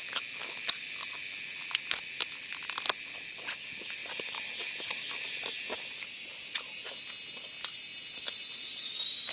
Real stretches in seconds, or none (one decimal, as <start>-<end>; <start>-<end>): 0.0-9.3